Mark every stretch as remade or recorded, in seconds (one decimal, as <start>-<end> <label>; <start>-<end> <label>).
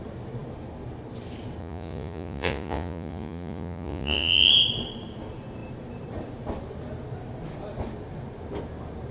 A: 0.0-1.6 recorded; 1.6-4.5 remade; 4.5-9.1 recorded